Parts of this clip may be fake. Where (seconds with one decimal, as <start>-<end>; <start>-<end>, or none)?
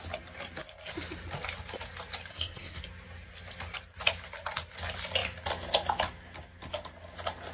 2.3-2.8